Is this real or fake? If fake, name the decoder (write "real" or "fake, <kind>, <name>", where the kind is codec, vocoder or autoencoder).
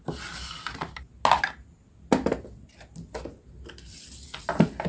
real